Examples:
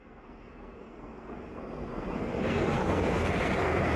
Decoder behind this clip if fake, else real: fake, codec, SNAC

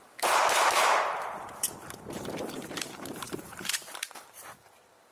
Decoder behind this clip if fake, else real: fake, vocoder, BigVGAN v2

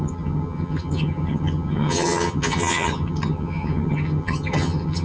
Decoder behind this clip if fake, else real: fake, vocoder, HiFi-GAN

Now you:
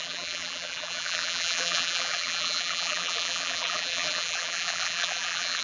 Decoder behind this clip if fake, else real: fake, vocoder, BigVGAN v2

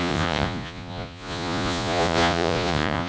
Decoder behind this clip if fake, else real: fake, vocoder, Vocos